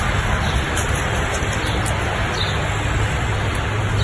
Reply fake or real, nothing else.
real